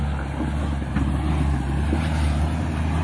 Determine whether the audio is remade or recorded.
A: recorded